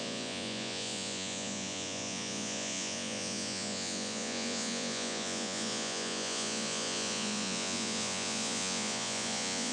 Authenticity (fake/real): fake